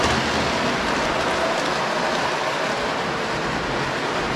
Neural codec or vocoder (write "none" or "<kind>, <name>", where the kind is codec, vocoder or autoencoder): none